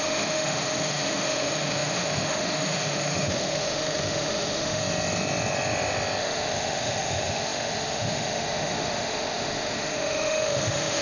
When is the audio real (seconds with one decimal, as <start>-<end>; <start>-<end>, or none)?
4.8-6.2